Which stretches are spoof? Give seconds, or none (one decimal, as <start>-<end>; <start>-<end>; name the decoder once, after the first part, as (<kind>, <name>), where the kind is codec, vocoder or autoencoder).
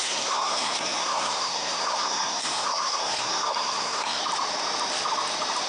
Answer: 0.0-4.2 (codec, SNAC)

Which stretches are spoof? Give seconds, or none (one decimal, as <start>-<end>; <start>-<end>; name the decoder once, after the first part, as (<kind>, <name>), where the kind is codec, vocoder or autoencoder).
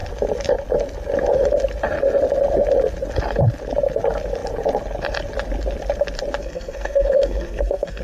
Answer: 6.4-8.0 (codec, SNAC)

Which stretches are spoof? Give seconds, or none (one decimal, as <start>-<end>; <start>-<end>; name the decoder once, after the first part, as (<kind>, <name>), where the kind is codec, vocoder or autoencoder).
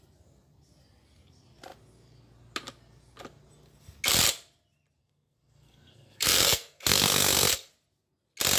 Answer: 5.0-7.7 (codec, SNAC)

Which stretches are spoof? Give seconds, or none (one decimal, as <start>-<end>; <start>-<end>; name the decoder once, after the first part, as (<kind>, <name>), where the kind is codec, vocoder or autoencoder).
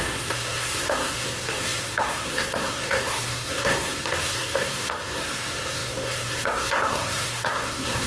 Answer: 0.0-8.1 (codec, SNAC)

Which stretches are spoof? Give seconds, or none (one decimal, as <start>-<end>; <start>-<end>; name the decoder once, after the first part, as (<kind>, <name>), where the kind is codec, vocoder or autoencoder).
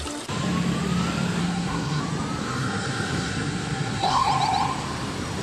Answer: 1.4-2.0 (codec, SNAC); 2.4-4.3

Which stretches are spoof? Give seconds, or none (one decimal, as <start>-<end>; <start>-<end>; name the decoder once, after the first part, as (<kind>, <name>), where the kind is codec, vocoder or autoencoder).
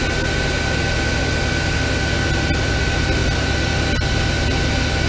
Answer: none